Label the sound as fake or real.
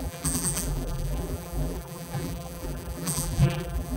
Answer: fake